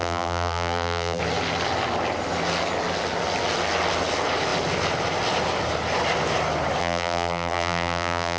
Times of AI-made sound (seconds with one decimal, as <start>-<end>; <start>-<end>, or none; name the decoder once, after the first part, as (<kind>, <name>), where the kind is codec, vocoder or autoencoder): 0.0-1.2 (vocoder, BigVGAN v2); 6.8-8.4